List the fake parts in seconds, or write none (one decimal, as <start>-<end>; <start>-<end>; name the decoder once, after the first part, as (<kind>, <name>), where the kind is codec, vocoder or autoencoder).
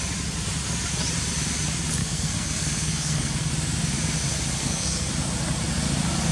2.0-3.5 (codec, SNAC); 4.6-5.1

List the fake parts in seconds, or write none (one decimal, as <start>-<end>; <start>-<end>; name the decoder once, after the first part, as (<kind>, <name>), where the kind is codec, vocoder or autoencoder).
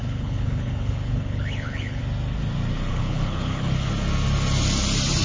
0.0-2.0 (codec, HILCodec); 2.9-3.9